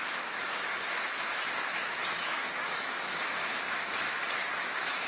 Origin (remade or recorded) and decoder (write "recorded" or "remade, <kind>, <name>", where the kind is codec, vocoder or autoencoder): remade, autoencoder, DAC-VAE